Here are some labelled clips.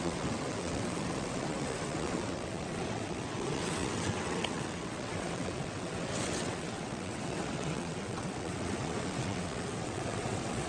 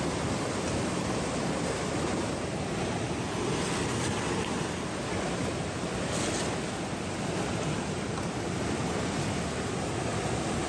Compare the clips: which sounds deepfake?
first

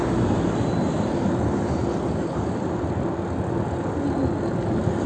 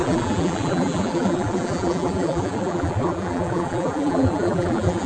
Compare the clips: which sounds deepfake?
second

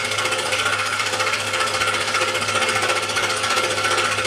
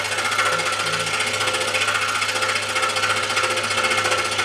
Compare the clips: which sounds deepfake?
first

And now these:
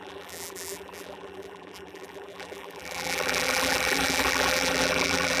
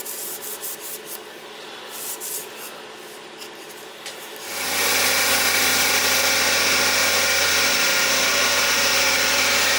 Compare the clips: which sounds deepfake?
first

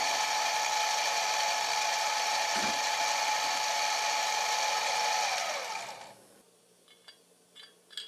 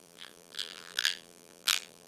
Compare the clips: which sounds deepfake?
second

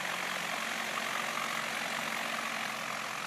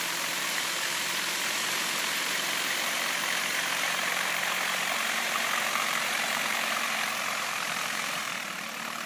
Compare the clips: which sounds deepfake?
second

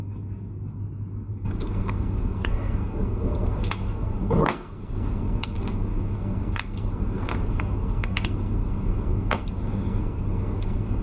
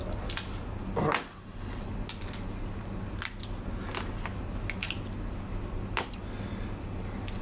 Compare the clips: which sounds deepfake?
first